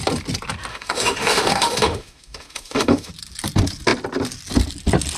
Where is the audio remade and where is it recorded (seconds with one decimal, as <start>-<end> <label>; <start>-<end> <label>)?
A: 0.0-0.7 recorded; 0.7-3.1 remade; 3.1-5.2 recorded